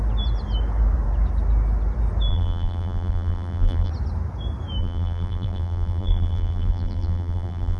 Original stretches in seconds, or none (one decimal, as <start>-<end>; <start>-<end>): 0.0-2.3; 3.9-4.8